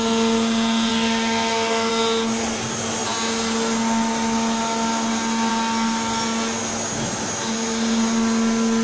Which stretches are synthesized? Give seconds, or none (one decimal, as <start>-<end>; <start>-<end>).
0.9-1.9

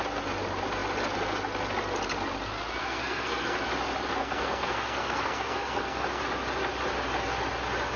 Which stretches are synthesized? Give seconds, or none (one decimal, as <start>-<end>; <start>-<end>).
2.8-3.6; 4.2-6.2

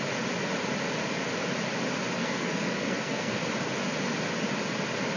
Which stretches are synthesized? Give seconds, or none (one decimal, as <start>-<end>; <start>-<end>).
2.2-3.4

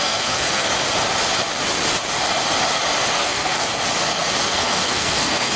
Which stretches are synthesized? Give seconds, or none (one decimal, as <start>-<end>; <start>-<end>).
0.0-0.7; 3.1-3.7; 4.5-5.6

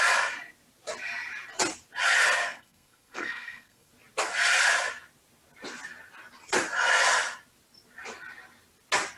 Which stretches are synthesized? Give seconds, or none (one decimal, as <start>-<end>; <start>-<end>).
2.4-3.9